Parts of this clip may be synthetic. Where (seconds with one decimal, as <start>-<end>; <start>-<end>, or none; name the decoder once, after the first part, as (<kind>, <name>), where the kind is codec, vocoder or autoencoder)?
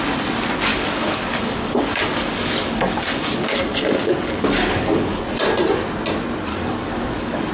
0.7-5.2 (codec, DAC); 6.5-7.5